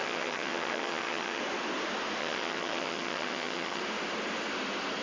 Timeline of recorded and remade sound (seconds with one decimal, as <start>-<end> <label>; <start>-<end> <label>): 0.0-1.4 remade; 1.4-2.2 recorded; 2.2-3.8 remade; 3.8-5.0 recorded